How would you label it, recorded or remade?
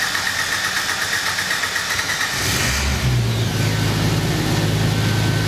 recorded